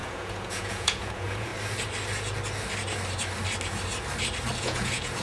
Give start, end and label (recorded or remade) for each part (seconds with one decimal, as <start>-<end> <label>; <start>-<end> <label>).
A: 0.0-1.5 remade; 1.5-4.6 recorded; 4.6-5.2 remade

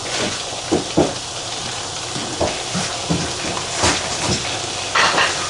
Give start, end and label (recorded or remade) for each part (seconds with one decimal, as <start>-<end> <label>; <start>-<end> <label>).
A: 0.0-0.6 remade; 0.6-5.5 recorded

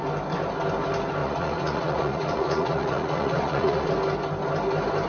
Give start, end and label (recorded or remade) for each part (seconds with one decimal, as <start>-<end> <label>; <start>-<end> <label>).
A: 0.0-1.2 recorded; 1.2-3.9 remade; 3.9-5.1 recorded